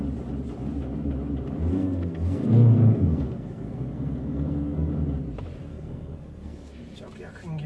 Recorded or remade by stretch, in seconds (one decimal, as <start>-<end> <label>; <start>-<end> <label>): 0.0-1.7 recorded; 1.7-4.9 remade; 4.9-5.7 recorded; 5.7-6.7 remade; 6.7-7.7 recorded